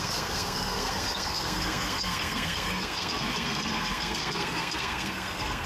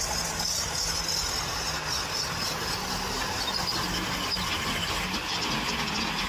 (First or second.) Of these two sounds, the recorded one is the second